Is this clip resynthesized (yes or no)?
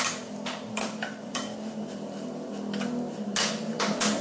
no